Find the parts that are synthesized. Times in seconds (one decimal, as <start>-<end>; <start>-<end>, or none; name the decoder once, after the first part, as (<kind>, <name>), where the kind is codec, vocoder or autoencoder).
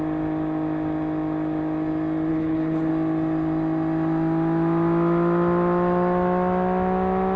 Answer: 2.3-2.9 (codec, HILCodec)